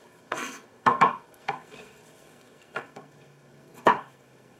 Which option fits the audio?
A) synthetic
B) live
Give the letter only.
A